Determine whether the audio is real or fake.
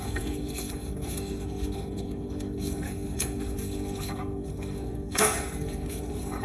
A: fake